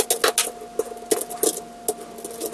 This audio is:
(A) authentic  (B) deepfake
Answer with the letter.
A